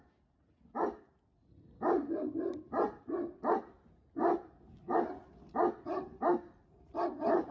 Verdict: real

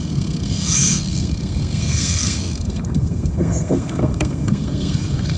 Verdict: fake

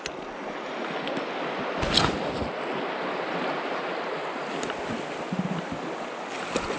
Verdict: real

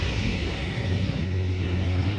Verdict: fake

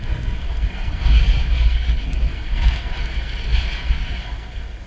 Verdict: fake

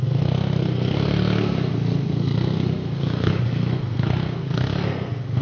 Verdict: fake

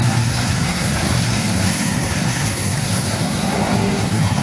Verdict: fake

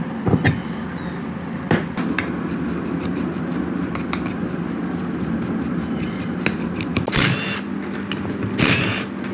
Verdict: real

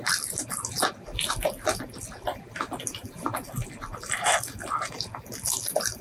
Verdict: real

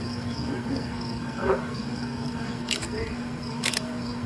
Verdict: fake